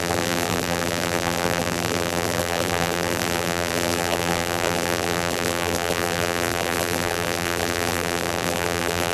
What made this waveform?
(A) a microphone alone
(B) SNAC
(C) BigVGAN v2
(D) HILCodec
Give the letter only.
C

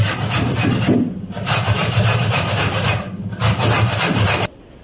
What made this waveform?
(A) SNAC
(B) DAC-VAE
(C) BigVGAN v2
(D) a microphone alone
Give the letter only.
D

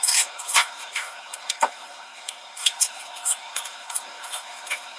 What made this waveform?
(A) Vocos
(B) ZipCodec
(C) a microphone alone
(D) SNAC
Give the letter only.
D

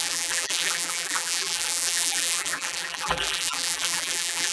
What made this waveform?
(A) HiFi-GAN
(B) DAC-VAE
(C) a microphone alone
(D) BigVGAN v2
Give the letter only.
D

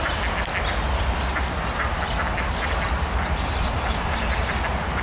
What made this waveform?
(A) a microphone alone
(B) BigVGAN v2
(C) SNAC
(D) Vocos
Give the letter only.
A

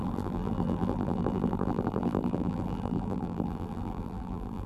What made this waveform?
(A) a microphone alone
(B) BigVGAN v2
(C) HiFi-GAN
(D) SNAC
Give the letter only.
B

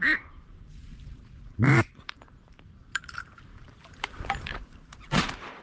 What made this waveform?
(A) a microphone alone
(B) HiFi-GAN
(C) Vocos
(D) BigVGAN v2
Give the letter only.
D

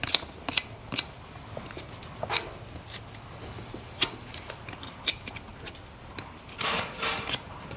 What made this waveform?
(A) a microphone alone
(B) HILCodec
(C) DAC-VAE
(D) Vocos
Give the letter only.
A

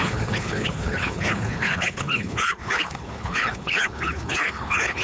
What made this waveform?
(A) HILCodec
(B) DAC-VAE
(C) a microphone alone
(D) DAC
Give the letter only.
A